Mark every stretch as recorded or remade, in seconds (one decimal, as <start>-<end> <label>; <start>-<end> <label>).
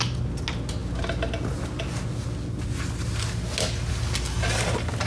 0.0-5.1 recorded